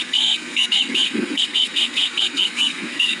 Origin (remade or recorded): remade